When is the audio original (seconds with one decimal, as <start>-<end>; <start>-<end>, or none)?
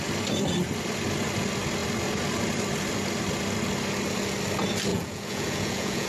0.0-4.9